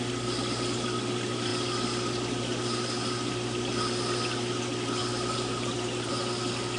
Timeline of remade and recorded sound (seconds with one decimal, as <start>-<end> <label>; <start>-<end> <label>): 0.0-5.0 recorded; 5.0-6.1 remade; 6.1-6.8 recorded